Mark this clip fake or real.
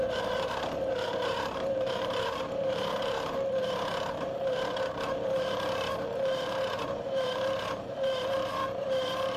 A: fake